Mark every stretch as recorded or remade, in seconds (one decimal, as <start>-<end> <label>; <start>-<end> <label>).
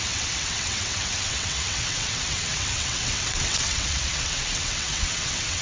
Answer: 0.0-5.6 remade